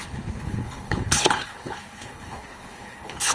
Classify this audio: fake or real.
fake